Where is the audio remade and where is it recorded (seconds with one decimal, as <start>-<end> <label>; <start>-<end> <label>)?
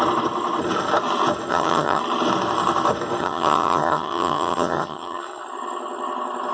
0.0-1.5 recorded; 1.5-2.0 remade; 2.0-3.2 recorded; 3.2-5.4 remade; 5.4-6.5 recorded